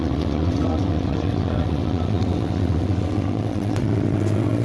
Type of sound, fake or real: fake